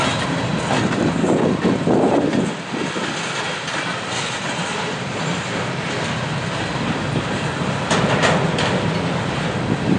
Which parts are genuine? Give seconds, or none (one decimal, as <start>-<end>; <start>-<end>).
0.0-10.0

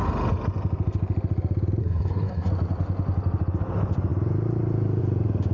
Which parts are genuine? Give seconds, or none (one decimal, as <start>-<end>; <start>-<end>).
0.0-1.8; 2.5-5.5

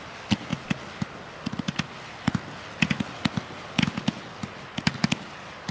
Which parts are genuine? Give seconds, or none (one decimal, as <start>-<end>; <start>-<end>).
0.0-5.7

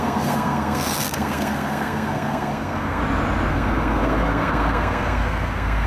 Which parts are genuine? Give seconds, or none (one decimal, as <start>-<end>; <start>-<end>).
3.0-3.5

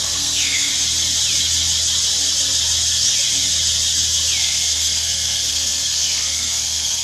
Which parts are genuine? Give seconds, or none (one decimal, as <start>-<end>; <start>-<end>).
0.7-4.4

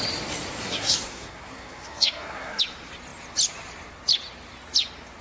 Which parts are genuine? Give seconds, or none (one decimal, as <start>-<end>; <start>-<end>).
0.0-0.6; 2.6-5.2

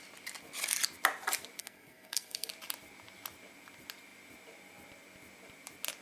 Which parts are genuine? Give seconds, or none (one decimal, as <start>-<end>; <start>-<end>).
0.0-1.6; 2.5-6.0